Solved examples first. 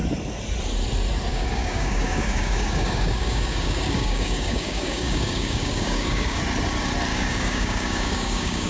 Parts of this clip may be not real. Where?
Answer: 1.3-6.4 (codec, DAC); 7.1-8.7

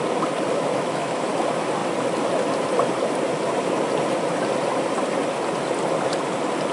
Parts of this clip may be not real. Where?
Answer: 0.5-1.3 (autoencoder, DAC-VAE)

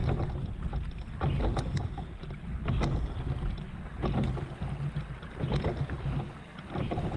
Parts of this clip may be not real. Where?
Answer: 6.5-7.2 (vocoder, BigVGAN v2)

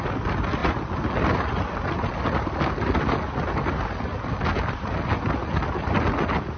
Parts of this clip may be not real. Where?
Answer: none

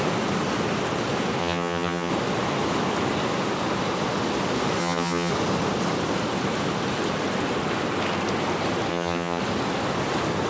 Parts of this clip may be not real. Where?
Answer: 1.4-2.1 (vocoder, HiFi-GAN); 4.8-5.3; 8.9-9.4

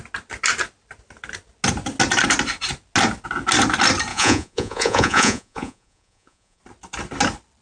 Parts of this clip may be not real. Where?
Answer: 4.1-6.6 (vocoder, Vocos)